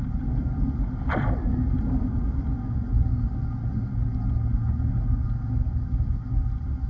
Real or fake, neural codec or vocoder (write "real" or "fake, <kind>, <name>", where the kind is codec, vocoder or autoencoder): real